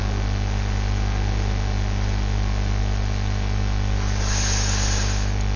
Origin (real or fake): real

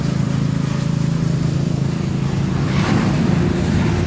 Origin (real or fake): real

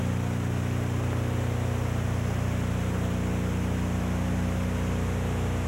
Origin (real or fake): real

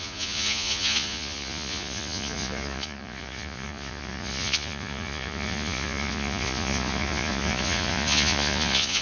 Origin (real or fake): fake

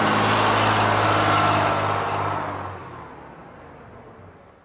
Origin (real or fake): real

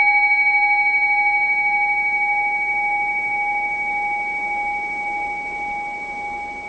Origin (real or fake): real